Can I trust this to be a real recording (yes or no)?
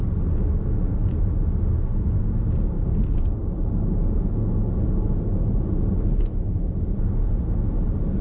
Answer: yes